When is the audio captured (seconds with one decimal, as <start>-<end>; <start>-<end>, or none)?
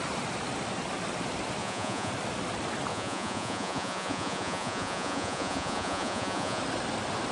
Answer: 0.0-1.6; 2.1-2.9; 6.6-7.3